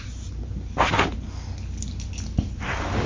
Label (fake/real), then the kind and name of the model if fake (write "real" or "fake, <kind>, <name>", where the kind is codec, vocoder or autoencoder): real